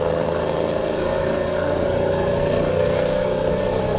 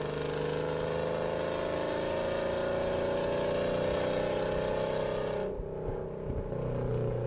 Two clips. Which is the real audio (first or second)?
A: second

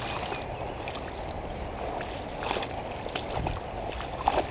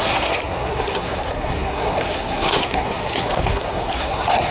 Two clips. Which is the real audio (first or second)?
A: first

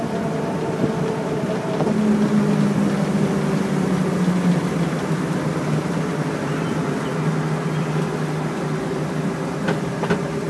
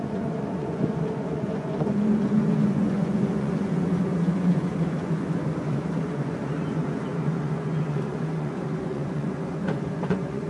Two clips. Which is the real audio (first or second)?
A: first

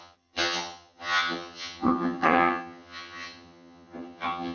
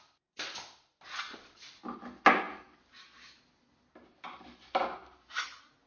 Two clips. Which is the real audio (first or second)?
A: second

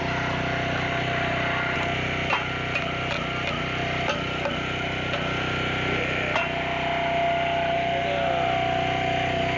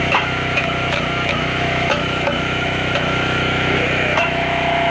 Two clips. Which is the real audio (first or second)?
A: first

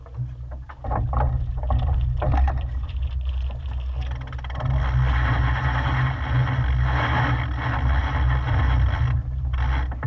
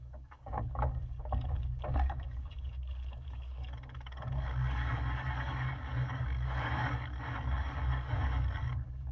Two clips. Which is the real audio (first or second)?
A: first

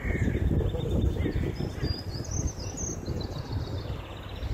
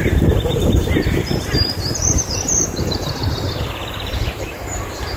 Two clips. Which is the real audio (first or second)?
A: first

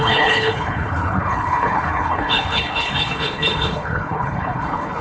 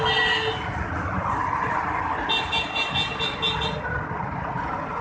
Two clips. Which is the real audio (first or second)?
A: second